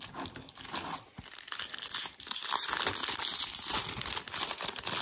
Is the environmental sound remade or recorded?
recorded